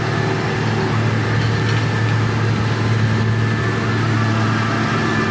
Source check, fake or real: real